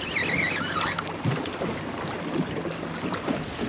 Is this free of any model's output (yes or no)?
yes